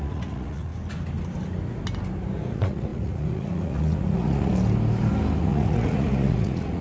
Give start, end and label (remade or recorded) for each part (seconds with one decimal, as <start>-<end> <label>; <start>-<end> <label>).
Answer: 0.0-0.7 remade; 0.7-2.5 recorded; 2.5-4.5 remade; 4.5-5.4 recorded; 5.4-6.8 remade